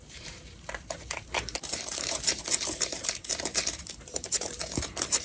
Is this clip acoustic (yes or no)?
no